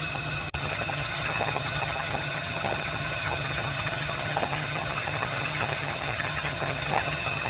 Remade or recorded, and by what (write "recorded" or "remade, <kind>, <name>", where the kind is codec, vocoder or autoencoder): remade, vocoder, HiFi-GAN